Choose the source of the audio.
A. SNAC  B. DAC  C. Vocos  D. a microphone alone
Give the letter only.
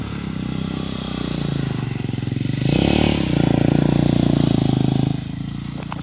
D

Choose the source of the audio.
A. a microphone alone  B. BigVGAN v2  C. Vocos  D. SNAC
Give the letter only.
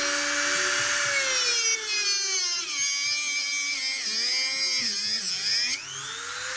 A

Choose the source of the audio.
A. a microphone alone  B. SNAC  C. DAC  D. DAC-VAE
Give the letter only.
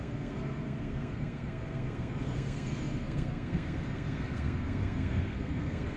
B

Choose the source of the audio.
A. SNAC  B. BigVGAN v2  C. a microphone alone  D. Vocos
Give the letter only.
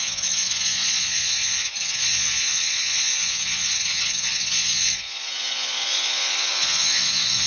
D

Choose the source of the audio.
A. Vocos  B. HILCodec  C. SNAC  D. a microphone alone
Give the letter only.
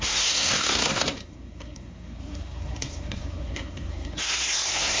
C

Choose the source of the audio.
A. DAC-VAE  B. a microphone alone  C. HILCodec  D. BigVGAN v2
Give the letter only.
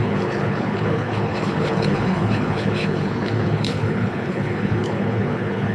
C